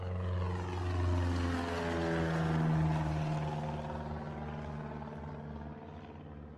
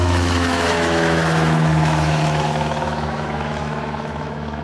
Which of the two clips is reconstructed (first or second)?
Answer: second